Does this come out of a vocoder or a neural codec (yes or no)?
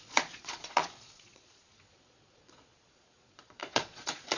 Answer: yes